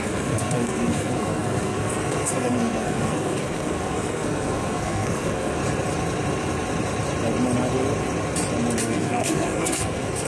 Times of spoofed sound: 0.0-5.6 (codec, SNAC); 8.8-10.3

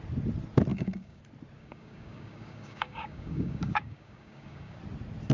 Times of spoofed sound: 0.7-1.2 (codec, DAC); 1.6-4.8

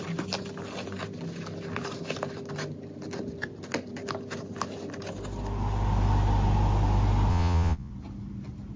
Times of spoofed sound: 7.3-7.9 (vocoder, Vocos)